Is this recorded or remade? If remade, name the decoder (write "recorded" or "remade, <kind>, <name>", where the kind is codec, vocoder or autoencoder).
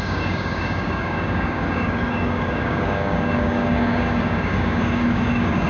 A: remade, codec, DAC